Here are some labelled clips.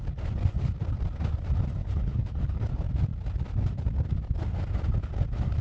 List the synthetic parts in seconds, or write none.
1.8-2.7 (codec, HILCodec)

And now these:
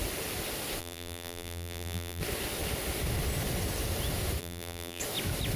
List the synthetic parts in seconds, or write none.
0.8-2.2 (vocoder, BigVGAN v2); 4.4-5.0

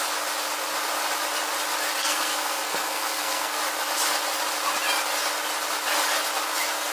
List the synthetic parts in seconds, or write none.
2.0-3.6 (codec, SNAC)

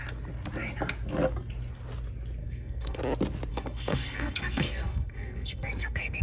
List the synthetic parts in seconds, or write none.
2.4-3.0 (codec, SNAC); 3.5-6.2

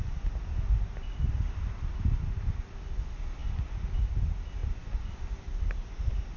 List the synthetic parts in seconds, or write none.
none

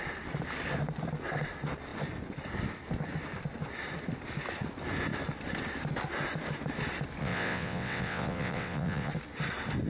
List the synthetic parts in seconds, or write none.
7.2-9.1 (vocoder, WaveNeXt)

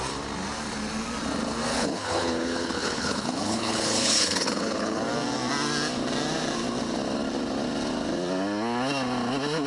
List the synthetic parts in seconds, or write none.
1.7-5.0 (codec, HILCodec)

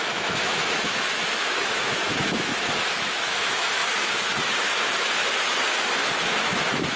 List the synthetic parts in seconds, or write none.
0.0-7.0 (autoencoder, DAC-VAE)